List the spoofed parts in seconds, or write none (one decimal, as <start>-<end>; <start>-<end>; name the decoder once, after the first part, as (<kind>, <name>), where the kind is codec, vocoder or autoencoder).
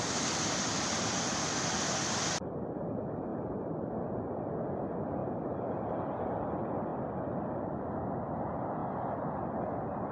3.3-3.9 (vocoder, BigVGAN v2); 5.2-6.4